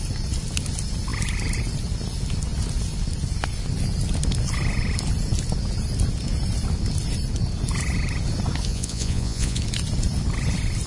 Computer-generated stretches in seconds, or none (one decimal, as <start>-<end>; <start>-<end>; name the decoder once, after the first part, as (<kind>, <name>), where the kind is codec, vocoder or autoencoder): 8.7-9.6 (vocoder, Vocos)